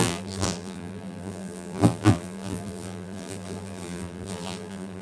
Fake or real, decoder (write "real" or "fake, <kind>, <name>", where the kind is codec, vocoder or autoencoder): fake, vocoder, BigVGAN v2